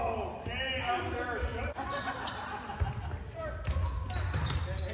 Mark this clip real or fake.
real